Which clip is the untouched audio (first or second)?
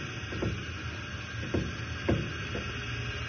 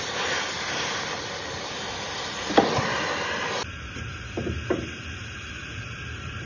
first